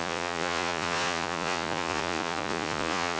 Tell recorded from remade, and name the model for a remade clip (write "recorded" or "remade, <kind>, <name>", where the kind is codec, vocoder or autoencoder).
remade, vocoder, Vocos